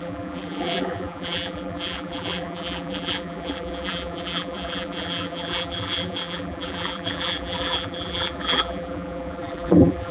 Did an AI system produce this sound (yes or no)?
yes